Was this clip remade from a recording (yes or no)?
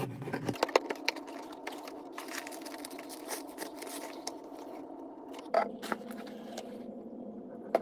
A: no